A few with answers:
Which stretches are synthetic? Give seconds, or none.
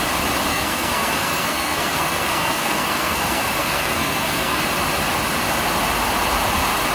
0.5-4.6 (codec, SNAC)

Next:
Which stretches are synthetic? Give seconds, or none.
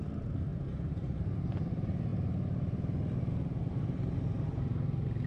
none